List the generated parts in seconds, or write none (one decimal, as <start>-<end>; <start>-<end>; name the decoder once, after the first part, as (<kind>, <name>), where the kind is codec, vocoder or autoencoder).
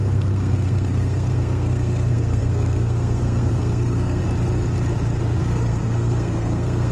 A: 0.0-4.2 (codec, SNAC); 5.4-6.9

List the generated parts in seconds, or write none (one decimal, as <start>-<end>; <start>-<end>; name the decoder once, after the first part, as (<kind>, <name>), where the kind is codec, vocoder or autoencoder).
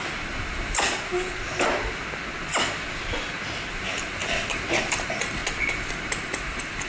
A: 0.0-1.1 (vocoder, BigVGAN v2); 3.7-5.4; 5.9-6.9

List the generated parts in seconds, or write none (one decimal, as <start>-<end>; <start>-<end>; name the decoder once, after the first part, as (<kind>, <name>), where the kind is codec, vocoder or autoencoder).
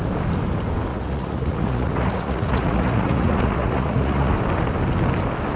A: 0.9-4.3 (vocoder, Vocos)